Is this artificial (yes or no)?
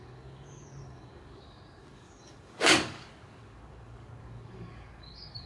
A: yes